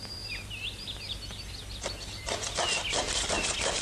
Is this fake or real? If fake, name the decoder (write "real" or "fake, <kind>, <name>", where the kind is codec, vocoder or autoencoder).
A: real